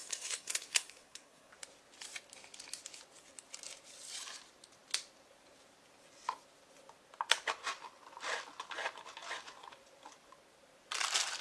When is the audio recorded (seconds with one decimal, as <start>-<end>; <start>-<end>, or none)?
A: 1.5-11.4